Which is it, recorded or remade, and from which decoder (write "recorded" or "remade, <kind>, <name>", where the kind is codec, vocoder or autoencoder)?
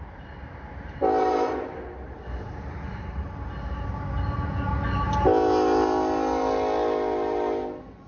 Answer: recorded